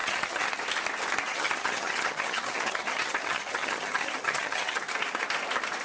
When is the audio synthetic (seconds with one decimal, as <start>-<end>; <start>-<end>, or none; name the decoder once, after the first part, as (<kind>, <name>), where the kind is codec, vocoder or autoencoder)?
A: 0.0-0.5 (vocoder, HiFi-GAN); 1.3-4.8